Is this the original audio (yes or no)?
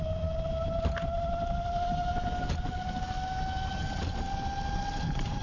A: yes